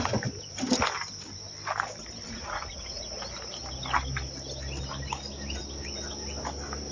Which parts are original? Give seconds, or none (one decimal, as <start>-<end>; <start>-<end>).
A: 0.0-2.2; 3.0-6.9